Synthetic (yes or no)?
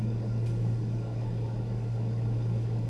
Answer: yes